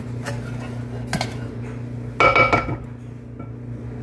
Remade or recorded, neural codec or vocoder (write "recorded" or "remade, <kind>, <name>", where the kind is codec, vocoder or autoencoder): recorded